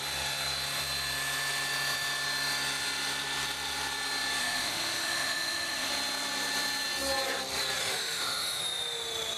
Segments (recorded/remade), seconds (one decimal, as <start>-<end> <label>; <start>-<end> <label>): 0.0-4.4 recorded; 4.4-5.9 remade; 5.9-7.8 recorded; 7.8-8.6 remade; 8.6-9.4 recorded